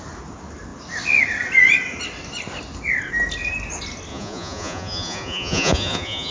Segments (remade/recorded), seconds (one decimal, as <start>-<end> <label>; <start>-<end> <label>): 0.0-4.1 recorded; 4.1-6.3 remade